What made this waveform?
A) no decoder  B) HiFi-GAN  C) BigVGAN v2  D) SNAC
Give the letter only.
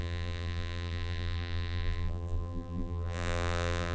C